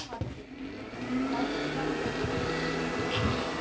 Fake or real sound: real